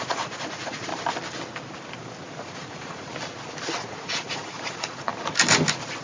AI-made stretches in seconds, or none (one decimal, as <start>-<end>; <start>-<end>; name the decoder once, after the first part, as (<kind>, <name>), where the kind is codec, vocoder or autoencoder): 0.0-0.9 (vocoder, Vocos); 2.4-3.1; 3.9-5.1